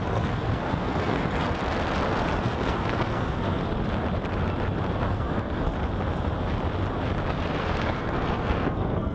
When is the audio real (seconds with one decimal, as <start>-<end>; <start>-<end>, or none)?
1.6-2.4; 3.6-4.9; 5.7-7.6